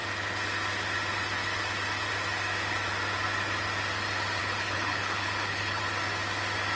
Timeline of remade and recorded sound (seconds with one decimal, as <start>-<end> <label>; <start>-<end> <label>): 0.0-4.4 recorded; 4.4-5.8 remade; 5.8-6.8 recorded